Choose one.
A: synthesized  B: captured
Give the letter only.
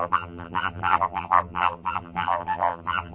A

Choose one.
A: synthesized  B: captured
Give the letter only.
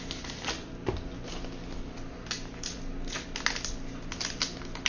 B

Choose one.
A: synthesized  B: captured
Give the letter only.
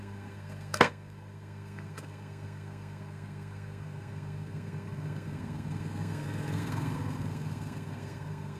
A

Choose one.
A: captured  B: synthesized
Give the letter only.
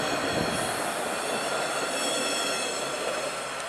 A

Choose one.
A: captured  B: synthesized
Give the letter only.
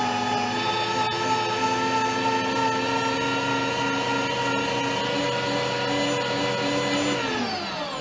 A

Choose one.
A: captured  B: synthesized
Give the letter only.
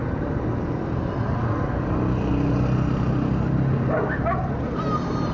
A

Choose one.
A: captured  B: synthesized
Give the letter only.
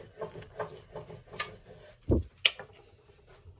A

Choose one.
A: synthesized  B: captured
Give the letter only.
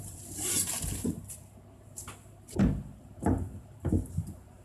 A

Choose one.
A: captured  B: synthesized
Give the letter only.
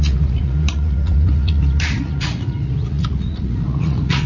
B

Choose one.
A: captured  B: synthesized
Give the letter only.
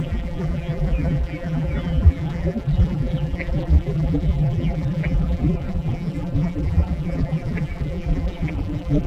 B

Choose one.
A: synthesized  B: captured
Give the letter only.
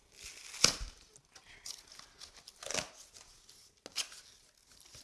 B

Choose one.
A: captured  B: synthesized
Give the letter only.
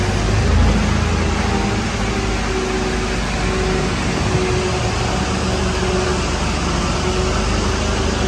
A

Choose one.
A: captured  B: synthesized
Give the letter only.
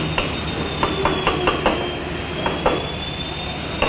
A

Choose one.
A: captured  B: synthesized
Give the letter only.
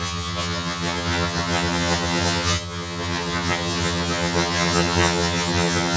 B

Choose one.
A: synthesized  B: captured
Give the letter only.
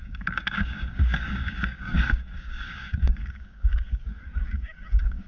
A